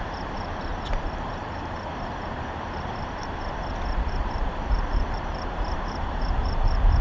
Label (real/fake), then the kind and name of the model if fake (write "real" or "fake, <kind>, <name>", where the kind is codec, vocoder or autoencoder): fake, vocoder, BigVGAN v2